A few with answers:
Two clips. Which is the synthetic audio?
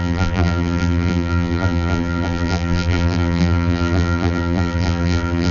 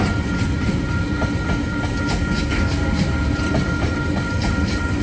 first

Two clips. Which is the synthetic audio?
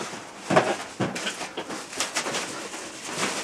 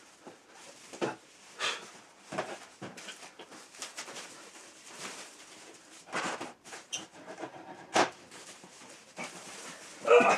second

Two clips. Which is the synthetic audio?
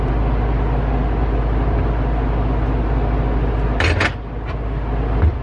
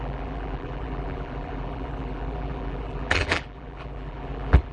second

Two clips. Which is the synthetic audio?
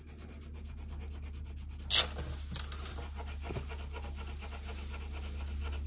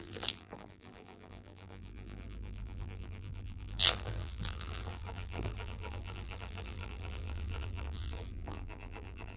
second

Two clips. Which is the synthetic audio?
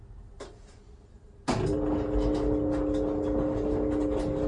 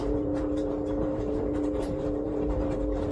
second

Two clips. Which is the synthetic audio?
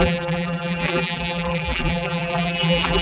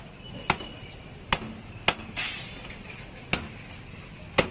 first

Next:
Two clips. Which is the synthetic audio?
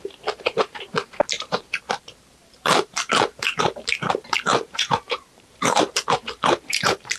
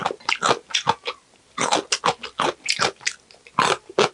first